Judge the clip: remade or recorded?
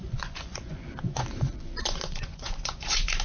remade